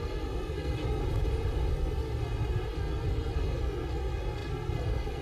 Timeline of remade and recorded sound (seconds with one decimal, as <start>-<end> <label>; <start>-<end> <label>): 0.0-1.0 remade; 1.0-1.7 recorded; 1.7-5.2 remade